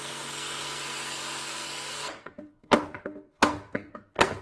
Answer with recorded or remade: remade